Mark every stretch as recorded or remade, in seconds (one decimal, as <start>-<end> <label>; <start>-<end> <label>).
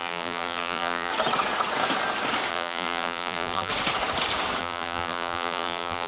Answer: 0.0-1.1 remade; 1.1-2.5 recorded; 2.5-3.7 remade; 3.7-4.6 recorded; 4.6-6.1 remade